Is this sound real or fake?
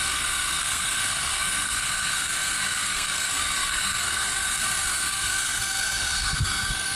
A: fake